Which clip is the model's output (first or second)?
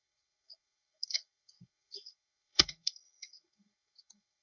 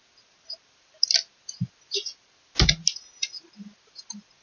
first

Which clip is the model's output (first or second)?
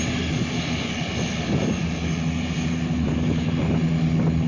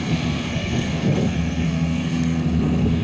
second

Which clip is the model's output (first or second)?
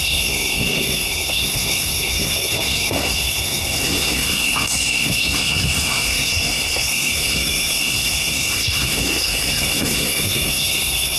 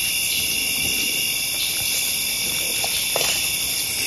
first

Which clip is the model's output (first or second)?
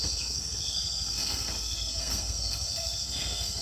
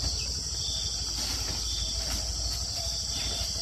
first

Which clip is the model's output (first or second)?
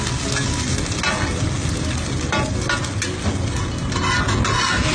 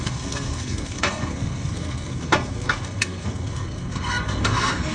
second